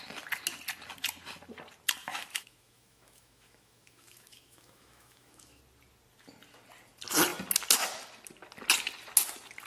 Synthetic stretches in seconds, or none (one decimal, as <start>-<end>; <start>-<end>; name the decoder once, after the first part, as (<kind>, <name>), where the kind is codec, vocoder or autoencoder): 2.0-5.6 (autoencoder, DAC-VAE)